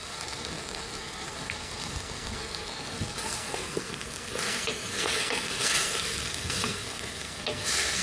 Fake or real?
fake